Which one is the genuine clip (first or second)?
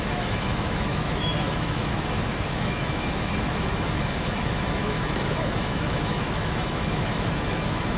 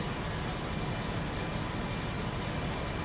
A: second